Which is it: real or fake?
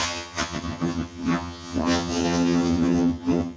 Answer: fake